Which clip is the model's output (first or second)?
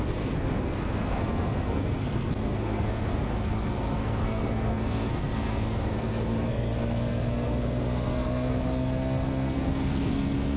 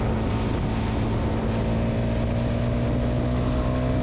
first